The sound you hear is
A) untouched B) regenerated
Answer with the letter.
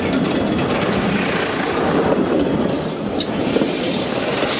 A